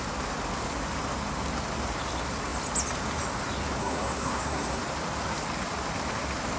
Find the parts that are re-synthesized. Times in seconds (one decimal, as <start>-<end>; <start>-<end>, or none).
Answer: 3.8-4.8